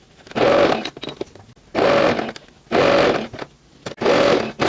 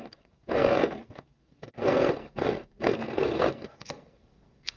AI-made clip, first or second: second